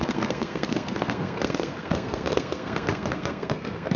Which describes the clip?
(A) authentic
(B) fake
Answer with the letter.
B